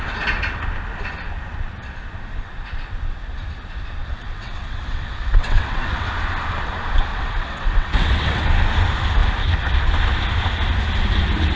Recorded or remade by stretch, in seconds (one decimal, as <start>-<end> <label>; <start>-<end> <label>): 0.0-4.0 recorded; 4.0-6.1 remade; 6.1-7.1 recorded; 7.1-8.5 remade; 8.5-11.6 recorded